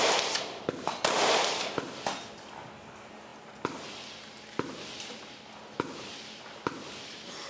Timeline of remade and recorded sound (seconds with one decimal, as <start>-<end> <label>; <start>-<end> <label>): 0.0-7.5 recorded